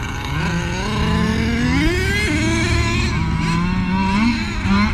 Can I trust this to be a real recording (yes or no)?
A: yes